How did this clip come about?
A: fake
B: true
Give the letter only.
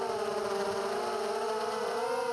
B